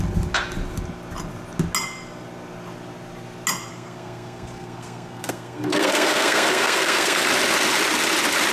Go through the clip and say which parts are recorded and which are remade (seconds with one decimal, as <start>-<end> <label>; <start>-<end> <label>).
0.0-3.7 recorded; 3.7-7.3 remade; 7.3-8.5 recorded